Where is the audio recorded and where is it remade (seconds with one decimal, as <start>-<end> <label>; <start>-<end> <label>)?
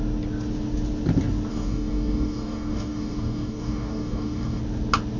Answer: 0.0-1.5 recorded; 1.5-4.6 remade; 4.6-5.2 recorded